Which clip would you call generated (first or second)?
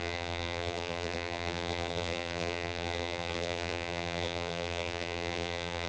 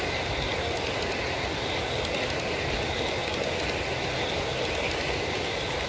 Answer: first